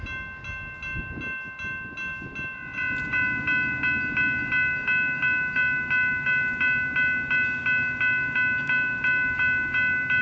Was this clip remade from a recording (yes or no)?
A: no